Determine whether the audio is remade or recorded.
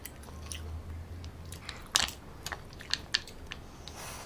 recorded